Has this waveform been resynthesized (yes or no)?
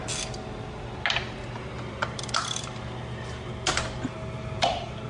no